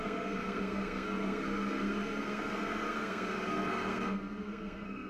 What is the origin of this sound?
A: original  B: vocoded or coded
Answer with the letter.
B